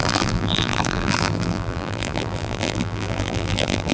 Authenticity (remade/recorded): remade